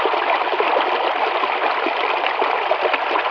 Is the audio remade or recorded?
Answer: recorded